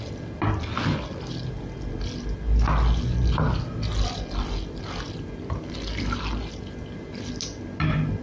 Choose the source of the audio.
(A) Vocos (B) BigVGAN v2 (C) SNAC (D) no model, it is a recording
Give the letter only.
D